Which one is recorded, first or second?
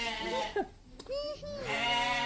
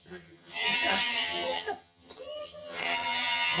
first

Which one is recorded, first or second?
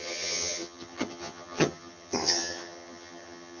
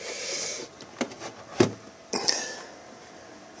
second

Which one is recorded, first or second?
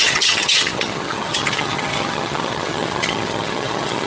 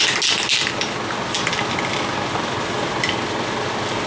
second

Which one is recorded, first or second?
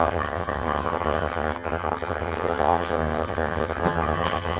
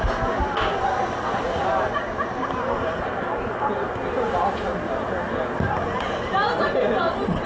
second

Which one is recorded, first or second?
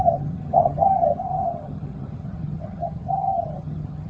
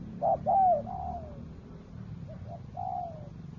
second